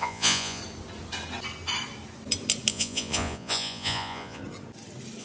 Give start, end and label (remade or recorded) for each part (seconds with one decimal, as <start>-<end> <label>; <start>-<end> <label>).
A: 0.0-0.6 remade; 0.6-2.7 recorded; 2.7-4.4 remade; 4.4-5.2 recorded